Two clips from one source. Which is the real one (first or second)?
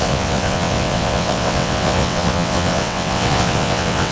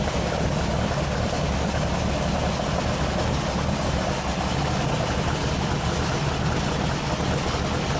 second